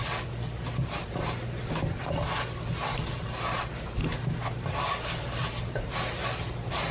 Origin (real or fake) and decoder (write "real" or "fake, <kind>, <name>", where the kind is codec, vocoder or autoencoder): real